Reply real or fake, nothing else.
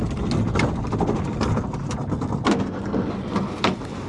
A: real